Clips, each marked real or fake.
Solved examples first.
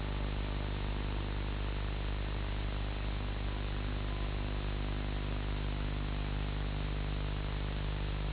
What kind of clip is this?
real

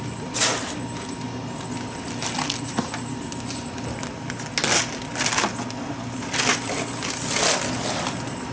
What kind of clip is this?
real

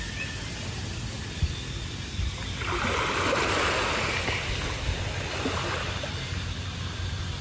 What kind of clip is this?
real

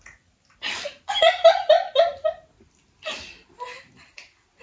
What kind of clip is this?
real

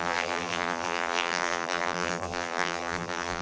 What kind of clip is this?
fake